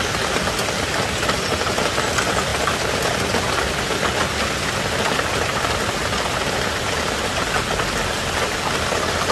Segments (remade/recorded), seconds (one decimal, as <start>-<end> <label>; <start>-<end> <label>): 0.0-9.3 recorded